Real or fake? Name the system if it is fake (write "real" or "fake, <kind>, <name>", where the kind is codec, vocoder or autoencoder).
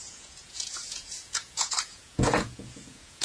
fake, vocoder, Vocos